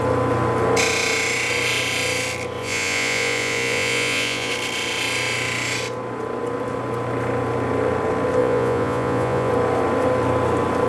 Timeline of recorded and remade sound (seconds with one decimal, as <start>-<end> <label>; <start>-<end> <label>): 0.0-2.6 recorded; 2.6-4.5 remade; 4.5-8.4 recorded; 8.4-9.5 remade; 9.5-10.9 recorded